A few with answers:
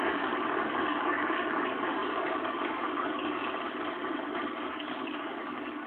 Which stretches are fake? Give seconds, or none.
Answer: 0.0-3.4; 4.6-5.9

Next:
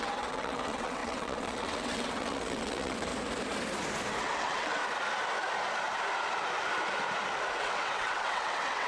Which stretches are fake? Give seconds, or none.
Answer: 0.0-3.1; 4.2-4.8; 7.6-8.9

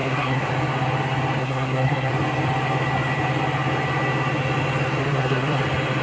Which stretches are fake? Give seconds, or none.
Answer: 0.0-0.5; 1.4-2.1; 5.0-5.6

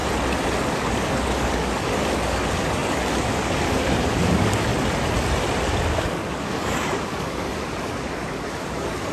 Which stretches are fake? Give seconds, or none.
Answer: 0.7-4.7; 5.9-9.1

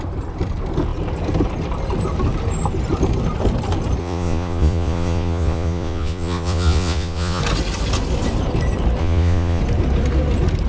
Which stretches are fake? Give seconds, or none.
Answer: 4.0-7.4; 9.0-9.6

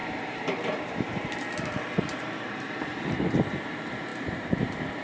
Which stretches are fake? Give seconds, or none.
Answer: 0.0-5.0

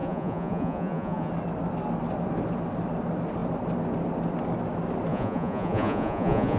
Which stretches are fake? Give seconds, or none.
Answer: 0.0-1.3; 5.1-6.6